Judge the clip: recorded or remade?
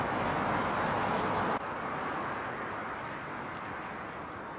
recorded